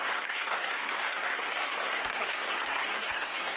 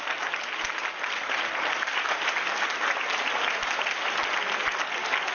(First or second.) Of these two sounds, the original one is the second